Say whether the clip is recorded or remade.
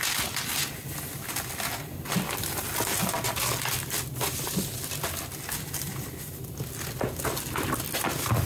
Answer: recorded